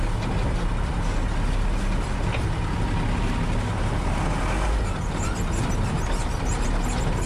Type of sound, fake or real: real